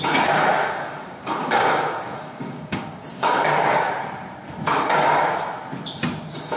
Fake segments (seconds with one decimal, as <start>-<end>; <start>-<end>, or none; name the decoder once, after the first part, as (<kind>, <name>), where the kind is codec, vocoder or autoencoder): 0.6-3.8 (codec, DAC); 4.7-5.5